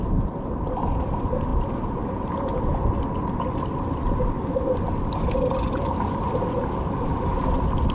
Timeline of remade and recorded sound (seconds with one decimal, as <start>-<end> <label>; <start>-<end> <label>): 0.0-7.9 recorded